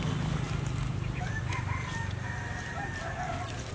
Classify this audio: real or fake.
real